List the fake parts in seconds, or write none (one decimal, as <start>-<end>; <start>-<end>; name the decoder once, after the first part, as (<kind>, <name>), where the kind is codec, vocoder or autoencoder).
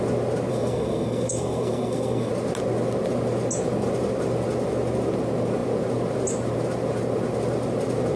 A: 0.5-2.3 (codec, SNAC)